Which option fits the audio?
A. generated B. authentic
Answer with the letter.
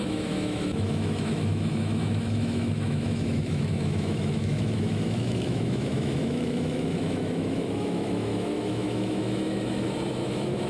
A